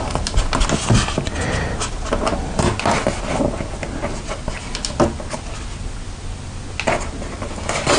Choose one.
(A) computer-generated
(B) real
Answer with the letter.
B